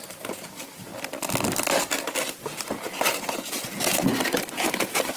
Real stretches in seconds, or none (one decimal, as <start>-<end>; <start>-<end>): 0.9-4.0

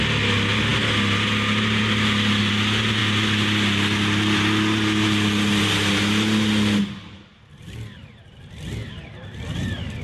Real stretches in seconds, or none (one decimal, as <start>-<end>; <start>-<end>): 0.0-10.0

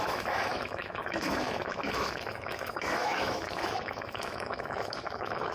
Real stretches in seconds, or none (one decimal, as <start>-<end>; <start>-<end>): none

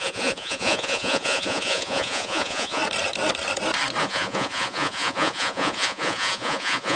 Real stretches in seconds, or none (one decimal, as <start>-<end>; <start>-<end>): 2.8-4.0